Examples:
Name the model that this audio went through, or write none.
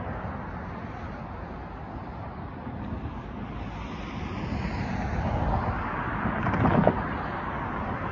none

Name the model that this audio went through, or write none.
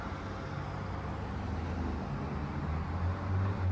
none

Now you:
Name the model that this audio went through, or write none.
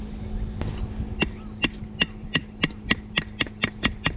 none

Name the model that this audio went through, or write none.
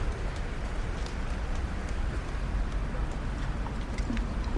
none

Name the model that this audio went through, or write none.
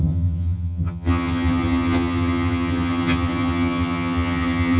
vocoder, HiFi-GAN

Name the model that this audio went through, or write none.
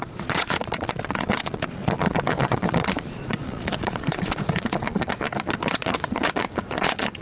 vocoder, Vocos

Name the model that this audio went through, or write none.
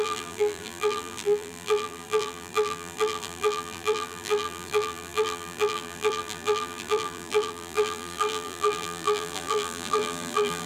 vocoder, BigVGAN v2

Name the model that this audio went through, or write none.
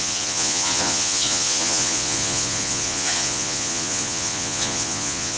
vocoder, Vocos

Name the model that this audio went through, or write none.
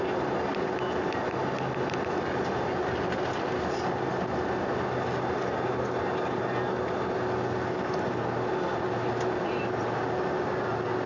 none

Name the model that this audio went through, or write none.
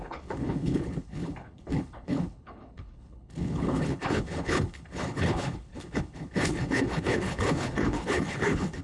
codec, HILCodec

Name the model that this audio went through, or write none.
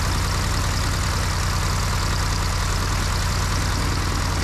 none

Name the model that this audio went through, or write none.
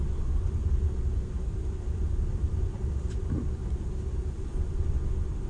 none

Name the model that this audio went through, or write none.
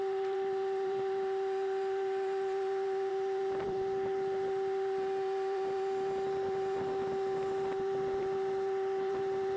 vocoder, BigVGAN v2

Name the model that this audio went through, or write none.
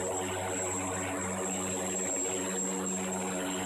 none